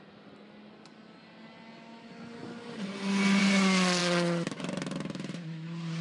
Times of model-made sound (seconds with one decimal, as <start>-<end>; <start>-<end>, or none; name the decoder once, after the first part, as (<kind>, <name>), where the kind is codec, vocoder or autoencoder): none